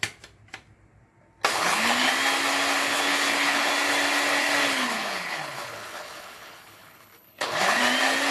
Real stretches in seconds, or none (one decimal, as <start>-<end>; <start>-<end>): 0.0-1.5; 2.1-2.8; 3.7-4.6; 7.8-8.3